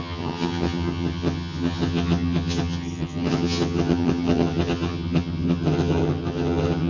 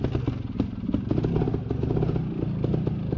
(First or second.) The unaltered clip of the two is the second